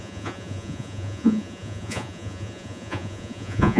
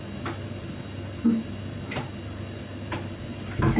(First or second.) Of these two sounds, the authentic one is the second